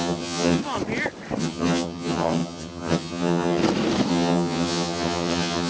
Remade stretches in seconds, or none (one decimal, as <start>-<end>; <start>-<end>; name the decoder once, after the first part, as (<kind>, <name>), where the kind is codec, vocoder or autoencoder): 0.0-0.6 (vocoder, HiFi-GAN); 1.4-3.6; 4.1-5.7